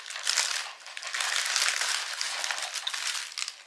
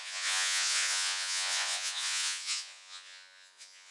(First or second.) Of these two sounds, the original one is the first